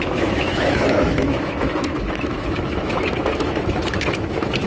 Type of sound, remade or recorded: remade